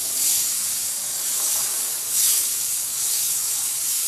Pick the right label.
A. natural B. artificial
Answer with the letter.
B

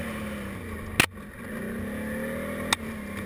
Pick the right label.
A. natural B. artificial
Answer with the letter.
A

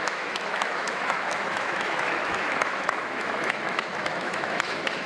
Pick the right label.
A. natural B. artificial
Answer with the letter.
B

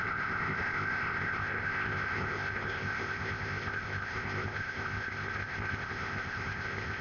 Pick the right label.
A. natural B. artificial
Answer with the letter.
B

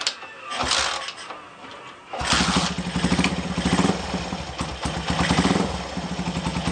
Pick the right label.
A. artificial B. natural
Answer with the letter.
B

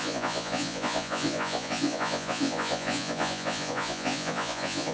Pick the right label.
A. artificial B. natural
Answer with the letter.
A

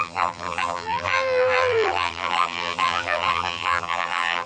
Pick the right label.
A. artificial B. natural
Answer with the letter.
A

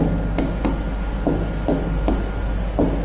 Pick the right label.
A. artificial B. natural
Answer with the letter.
B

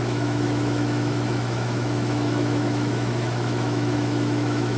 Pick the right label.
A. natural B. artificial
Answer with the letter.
B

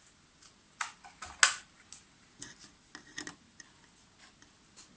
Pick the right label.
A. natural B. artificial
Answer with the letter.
A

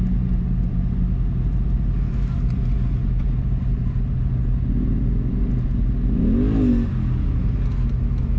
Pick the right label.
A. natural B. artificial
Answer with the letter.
A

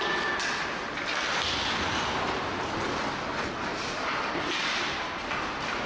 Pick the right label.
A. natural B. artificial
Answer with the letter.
A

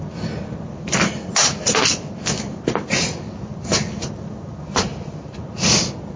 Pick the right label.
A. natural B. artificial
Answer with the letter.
A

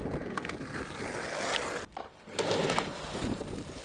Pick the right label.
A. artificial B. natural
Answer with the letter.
B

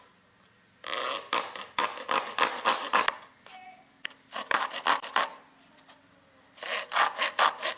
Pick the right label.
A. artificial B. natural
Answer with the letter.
B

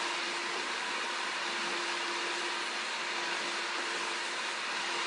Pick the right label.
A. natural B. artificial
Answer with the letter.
A